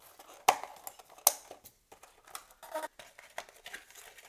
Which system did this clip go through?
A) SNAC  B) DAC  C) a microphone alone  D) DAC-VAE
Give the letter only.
C